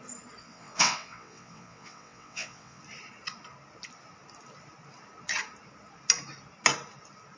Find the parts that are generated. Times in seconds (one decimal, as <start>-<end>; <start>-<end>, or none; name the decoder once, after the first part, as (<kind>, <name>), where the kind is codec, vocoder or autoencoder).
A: 0.4-2.8 (vocoder, WaveNeXt)